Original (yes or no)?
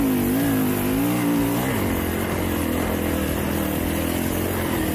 yes